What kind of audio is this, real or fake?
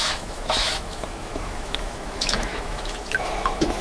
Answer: fake